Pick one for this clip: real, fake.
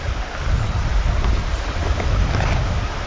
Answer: real